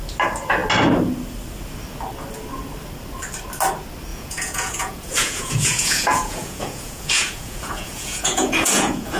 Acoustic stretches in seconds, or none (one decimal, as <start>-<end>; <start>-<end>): 0.0-4.1